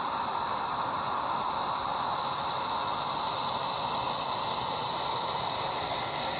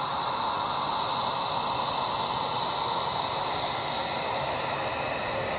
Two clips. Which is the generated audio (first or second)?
first